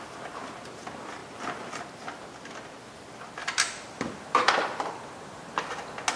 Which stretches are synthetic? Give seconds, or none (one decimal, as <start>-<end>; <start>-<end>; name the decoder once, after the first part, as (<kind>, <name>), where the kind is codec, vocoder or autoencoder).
1.2-1.8 (vocoder, BigVGAN v2); 3.4-5.8